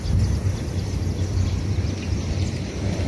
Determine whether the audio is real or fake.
real